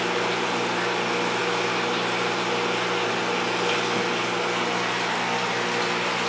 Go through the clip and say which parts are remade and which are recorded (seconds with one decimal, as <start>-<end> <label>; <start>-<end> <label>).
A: 0.0-6.3 recorded